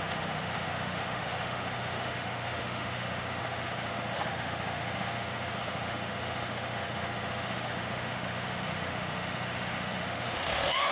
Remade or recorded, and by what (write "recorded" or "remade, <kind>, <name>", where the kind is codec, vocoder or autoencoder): remade, autoencoder, DAC-VAE